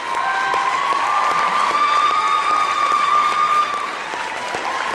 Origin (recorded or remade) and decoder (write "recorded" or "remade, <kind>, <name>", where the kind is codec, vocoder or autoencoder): recorded